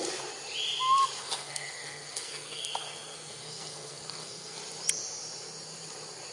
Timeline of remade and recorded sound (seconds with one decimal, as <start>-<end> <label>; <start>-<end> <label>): 0.0-1.2 recorded; 1.2-4.6 remade; 4.6-6.3 recorded

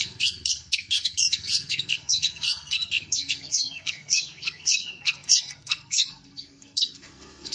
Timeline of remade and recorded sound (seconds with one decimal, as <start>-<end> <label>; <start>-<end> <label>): 0.0-7.5 remade

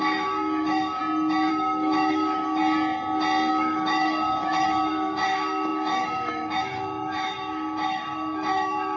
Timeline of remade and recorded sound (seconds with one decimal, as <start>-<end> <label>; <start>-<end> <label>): 0.0-1.0 remade; 1.0-1.5 recorded; 1.5-2.6 remade; 2.6-3.5 recorded; 3.5-9.0 remade

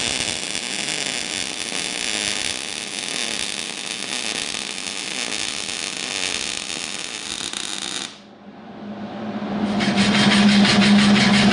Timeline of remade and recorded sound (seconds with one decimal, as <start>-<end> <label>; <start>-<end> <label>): 0.0-11.5 recorded

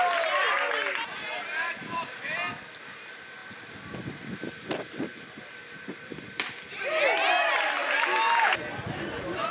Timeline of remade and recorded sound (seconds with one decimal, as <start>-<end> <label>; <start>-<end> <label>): 0.0-9.5 recorded